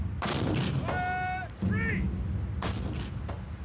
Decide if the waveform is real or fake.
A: real